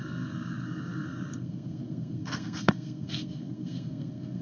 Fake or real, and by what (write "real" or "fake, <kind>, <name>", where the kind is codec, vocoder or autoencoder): fake, codec, SNAC